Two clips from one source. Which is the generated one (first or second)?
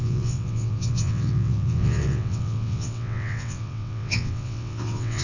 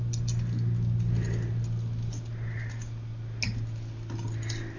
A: first